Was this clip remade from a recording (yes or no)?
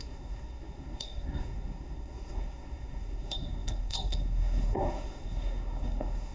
yes